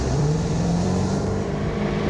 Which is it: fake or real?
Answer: fake